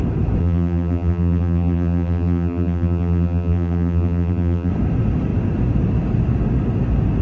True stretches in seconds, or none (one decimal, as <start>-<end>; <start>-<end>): 0.0-0.4; 4.7-7.2